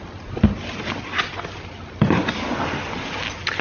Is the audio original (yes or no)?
yes